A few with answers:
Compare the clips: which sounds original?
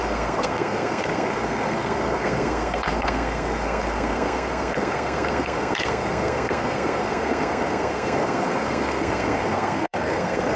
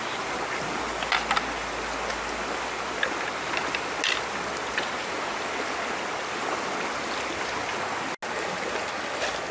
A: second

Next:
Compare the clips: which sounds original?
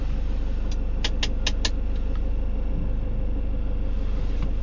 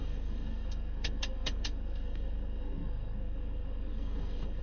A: first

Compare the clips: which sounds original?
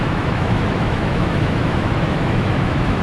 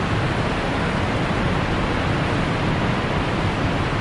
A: second